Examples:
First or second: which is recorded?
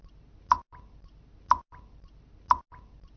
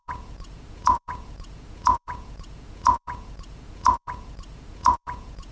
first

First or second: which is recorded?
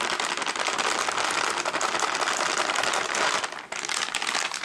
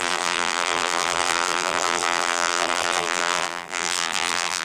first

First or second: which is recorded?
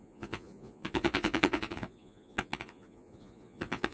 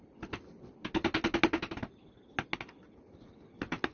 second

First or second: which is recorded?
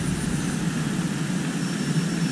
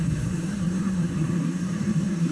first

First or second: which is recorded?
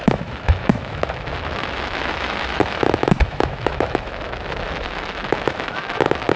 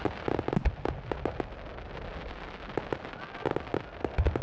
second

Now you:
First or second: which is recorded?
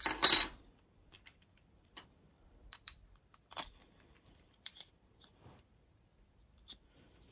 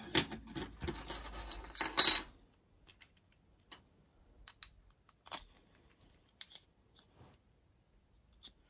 second